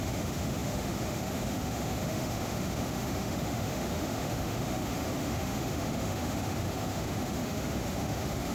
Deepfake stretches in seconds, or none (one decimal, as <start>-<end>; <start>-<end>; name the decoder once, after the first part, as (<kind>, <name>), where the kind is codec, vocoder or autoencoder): 0.0-8.5 (autoencoder, DAC-VAE)